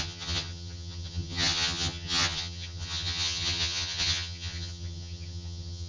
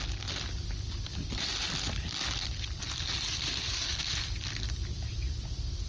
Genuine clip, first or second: second